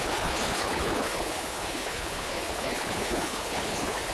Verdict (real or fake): fake